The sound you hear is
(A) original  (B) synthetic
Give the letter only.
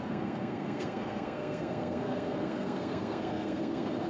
B